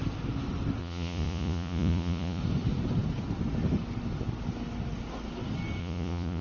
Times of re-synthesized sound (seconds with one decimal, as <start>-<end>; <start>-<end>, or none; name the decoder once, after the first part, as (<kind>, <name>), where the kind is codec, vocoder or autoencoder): 0.8-2.4 (vocoder, Vocos); 5.8-6.4